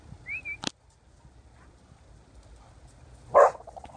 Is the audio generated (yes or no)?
no